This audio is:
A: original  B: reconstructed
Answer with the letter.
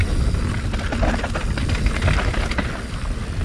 A